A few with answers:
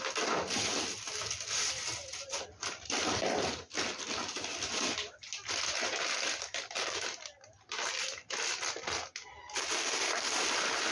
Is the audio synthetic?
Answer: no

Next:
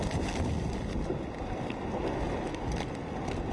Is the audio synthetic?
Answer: no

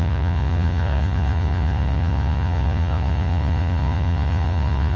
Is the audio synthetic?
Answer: yes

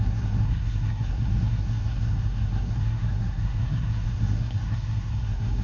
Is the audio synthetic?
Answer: yes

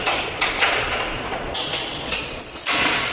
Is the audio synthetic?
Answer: yes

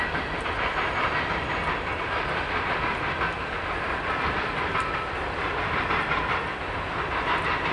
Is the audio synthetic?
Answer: no